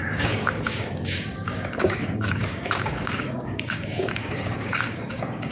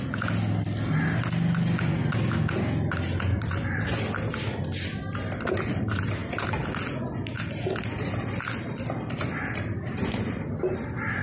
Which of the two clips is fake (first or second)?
first